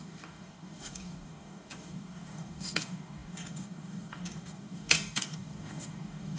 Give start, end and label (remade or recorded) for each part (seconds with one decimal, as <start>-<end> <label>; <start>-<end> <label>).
0.0-6.4 remade